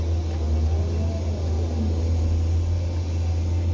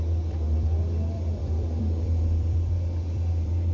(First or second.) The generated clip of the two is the second